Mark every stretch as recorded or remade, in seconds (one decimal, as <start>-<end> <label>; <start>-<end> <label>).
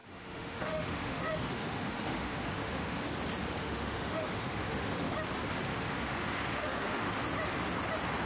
0.0-3.0 remade; 3.0-3.6 recorded; 3.6-5.1 remade; 5.1-5.7 recorded; 5.7-7.2 remade; 7.2-8.3 recorded